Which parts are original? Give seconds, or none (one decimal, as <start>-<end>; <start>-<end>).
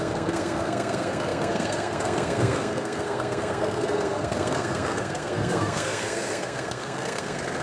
none